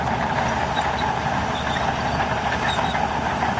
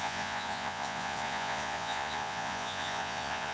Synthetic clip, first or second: second